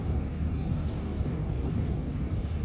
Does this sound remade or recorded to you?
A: remade